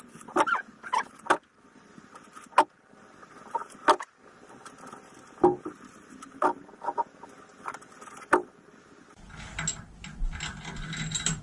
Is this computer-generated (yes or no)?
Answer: no